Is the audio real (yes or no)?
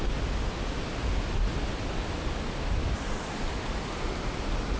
yes